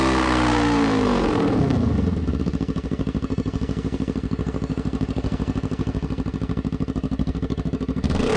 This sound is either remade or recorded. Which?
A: remade